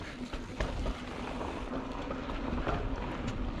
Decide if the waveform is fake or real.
real